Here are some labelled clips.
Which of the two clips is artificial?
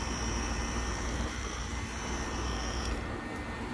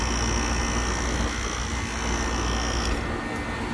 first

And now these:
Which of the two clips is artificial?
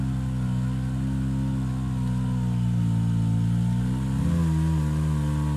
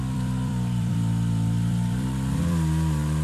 second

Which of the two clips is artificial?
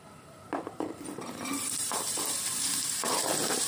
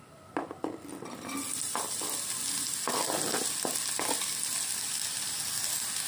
first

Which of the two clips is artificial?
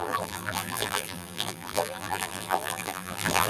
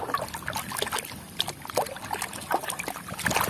first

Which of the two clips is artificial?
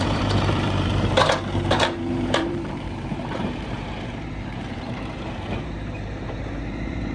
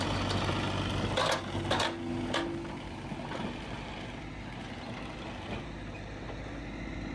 first